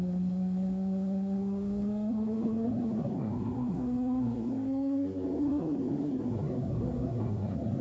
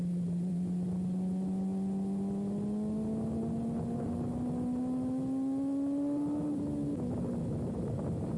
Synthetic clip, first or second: first